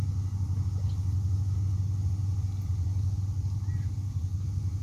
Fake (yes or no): no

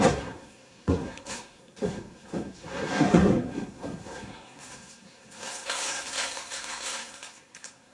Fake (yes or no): yes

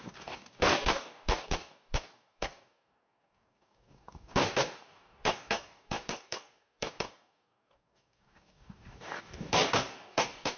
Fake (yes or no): yes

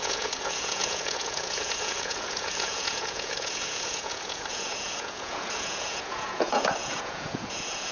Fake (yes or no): yes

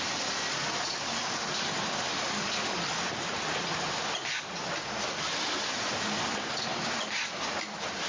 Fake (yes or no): no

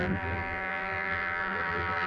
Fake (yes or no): yes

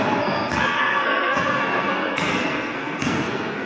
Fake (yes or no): yes